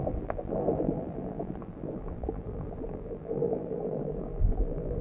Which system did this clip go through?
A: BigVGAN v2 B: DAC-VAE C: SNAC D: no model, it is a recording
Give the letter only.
A